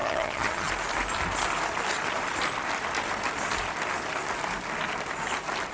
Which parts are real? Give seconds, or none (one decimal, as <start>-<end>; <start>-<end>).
0.7-5.7